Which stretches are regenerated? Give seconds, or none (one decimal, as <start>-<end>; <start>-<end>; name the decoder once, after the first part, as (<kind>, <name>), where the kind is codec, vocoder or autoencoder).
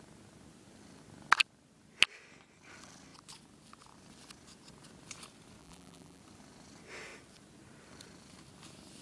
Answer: 5.6-6.2 (vocoder, BigVGAN v2)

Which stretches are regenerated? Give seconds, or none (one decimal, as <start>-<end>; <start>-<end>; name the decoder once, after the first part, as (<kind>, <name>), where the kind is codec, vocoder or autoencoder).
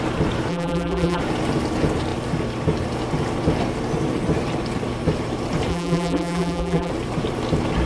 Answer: 0.5-1.2 (vocoder, BigVGAN v2); 5.7-6.9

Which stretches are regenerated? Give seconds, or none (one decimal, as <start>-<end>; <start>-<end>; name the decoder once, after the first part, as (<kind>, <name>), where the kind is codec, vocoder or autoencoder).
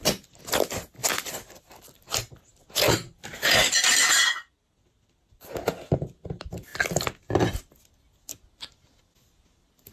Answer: none